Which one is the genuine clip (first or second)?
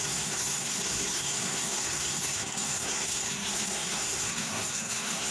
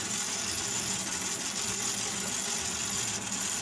second